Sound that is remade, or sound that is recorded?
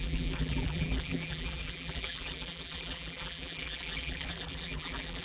remade